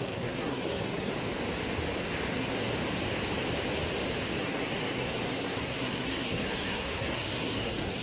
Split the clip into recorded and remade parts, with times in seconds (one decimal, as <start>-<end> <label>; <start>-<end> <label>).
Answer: 0.0-1.1 remade; 1.1-2.3 recorded; 2.3-2.7 remade; 2.7-4.4 recorded; 4.4-8.0 remade